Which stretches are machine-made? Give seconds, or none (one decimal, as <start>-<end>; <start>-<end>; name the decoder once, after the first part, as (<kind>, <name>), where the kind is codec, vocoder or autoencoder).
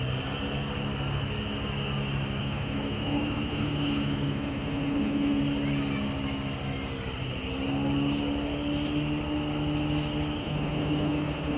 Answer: 2.4-5.4 (autoencoder, DAC-VAE); 10.4-11.6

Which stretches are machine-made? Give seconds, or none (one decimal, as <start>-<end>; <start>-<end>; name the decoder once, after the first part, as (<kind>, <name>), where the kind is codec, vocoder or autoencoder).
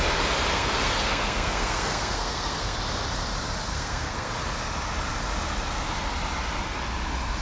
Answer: 0.5-2.8 (codec, SNAC); 3.7-4.3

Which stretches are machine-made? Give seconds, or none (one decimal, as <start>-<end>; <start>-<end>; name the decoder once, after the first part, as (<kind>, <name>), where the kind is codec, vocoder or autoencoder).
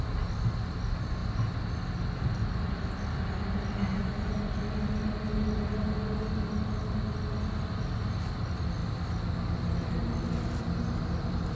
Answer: 3.9-4.5 (vocoder, Vocos)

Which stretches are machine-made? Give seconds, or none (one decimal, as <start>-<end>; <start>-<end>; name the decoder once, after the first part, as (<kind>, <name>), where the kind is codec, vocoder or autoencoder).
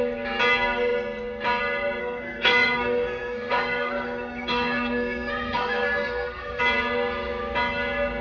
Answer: 2.0-6.6 (codec, SNAC)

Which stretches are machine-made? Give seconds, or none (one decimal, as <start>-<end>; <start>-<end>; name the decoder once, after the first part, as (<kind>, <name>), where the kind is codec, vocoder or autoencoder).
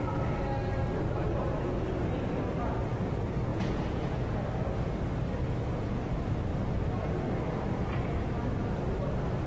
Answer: 3.5-4.4 (vocoder, Vocos)